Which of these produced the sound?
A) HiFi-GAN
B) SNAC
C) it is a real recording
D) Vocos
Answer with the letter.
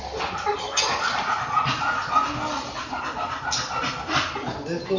C